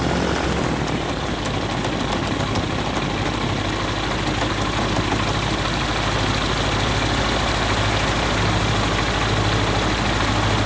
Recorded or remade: recorded